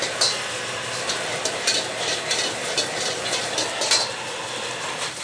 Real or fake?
real